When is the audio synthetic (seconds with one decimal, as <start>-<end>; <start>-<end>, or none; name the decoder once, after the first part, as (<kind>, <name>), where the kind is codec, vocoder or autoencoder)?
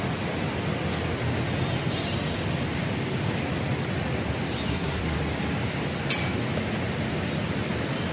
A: 4.7-5.2 (codec, SNAC)